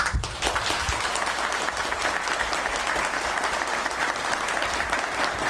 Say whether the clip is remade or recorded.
recorded